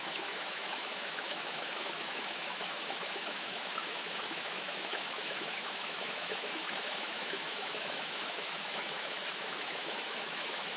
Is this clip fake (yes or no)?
yes